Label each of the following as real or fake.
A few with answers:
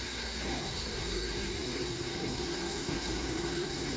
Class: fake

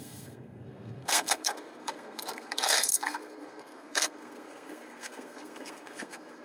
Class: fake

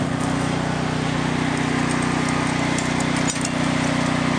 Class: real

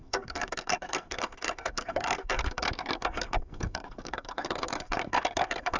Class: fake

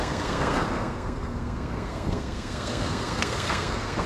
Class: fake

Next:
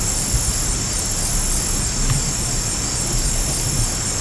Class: real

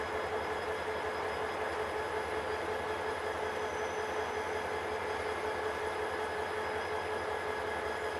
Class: real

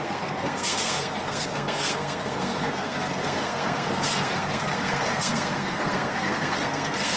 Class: fake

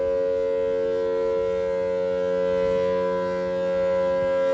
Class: real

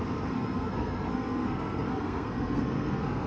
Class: fake